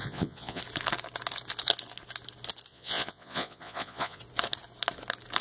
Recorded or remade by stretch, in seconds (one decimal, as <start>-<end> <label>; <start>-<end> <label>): 0.0-0.6 remade; 0.6-2.7 recorded; 2.7-4.2 remade; 4.2-5.4 recorded